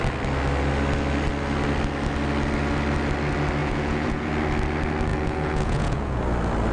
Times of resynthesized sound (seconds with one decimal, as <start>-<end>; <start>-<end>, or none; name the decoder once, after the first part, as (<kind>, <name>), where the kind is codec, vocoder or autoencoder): 3.6-4.3 (vocoder, Vocos); 5.1-6.2